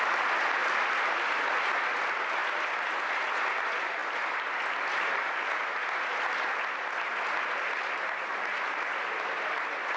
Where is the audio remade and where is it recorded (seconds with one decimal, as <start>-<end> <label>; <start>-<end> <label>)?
0.0-10.0 recorded